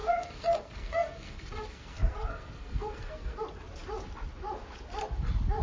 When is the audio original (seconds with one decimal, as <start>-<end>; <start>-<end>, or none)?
3.4-5.6